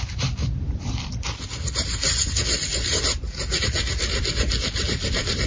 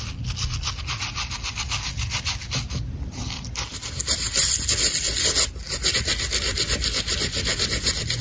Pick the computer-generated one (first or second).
first